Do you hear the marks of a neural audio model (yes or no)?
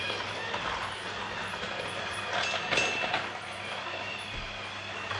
no